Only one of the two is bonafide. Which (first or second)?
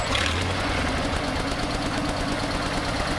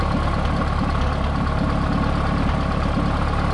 second